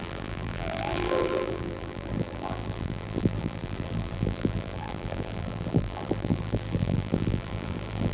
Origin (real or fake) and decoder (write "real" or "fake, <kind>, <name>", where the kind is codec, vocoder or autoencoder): fake, vocoder, BigVGAN v2